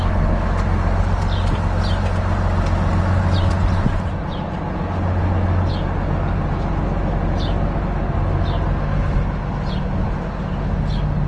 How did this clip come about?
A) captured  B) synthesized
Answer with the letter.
A